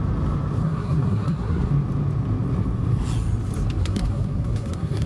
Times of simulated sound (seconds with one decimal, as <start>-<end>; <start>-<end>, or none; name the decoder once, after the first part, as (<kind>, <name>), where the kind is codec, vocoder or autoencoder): 0.6-1.7 (codec, SNAC); 3.8-5.1